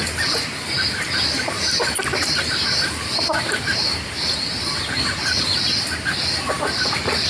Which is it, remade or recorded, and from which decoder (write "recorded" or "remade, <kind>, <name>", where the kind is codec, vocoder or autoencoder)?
remade, vocoder, BigVGAN v2